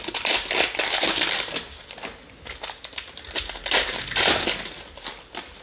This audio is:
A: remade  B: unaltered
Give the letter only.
B